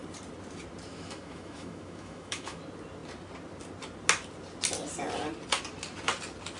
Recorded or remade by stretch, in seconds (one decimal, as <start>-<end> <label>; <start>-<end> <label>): 0.0-0.9 recorded; 0.9-2.6 remade; 2.6-6.6 recorded